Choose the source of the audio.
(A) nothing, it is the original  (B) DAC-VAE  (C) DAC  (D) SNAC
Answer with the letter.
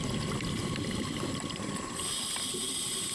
A